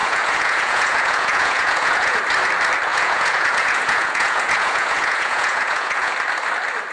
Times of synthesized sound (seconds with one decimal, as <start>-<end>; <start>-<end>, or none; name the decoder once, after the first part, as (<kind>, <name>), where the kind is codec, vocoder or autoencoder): 0.0-2.2 (vocoder, Vocos); 2.9-6.1